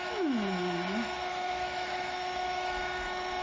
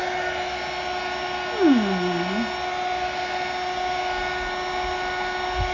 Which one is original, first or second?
second